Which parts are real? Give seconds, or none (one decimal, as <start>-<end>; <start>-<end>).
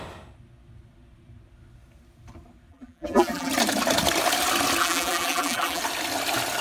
0.0-2.7; 3.5-4.8; 5.8-6.6